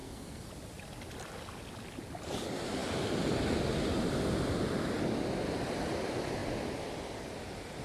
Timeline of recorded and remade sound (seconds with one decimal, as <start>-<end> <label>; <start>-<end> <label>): 0.0-0.5 remade; 0.5-7.8 recorded